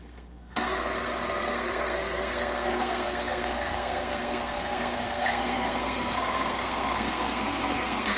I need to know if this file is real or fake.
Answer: fake